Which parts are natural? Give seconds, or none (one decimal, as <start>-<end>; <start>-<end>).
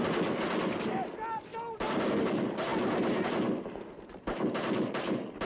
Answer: 0.0-5.4